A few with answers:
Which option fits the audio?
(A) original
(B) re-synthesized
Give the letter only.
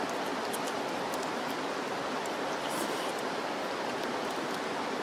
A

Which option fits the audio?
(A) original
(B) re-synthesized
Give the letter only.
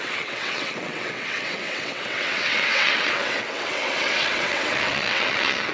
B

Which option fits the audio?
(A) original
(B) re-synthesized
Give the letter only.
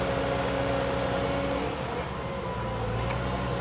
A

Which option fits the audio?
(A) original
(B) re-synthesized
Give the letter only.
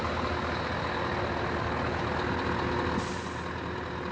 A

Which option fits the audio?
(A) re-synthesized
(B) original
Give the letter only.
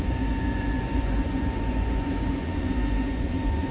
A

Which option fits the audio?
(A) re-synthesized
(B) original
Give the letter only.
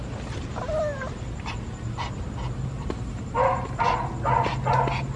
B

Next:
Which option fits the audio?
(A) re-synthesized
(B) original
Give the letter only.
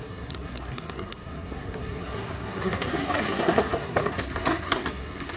A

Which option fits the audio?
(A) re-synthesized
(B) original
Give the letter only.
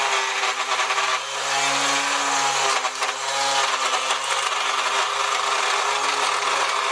B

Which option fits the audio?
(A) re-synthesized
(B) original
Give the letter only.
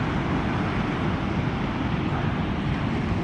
B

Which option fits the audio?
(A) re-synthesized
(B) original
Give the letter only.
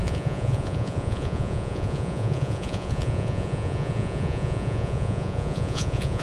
A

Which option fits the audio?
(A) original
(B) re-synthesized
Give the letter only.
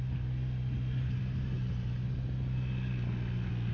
A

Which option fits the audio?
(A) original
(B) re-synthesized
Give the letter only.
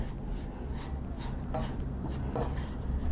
A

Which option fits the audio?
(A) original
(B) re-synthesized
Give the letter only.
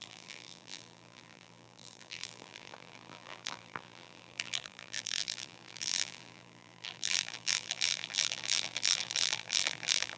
B